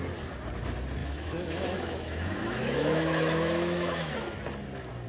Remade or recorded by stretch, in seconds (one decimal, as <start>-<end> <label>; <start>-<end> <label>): 0.0-1.0 recorded; 1.0-4.1 remade; 4.1-5.1 recorded